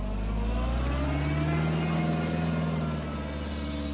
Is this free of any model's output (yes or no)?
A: yes